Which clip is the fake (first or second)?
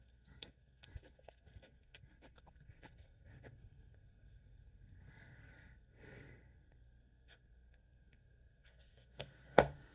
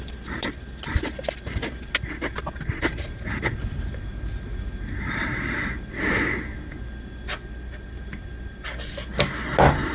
first